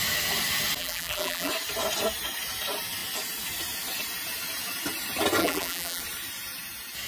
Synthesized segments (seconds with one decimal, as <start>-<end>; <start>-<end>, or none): 0.8-1.5; 5.4-6.0